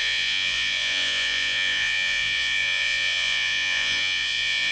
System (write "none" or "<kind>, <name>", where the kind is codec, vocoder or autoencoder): vocoder, Vocos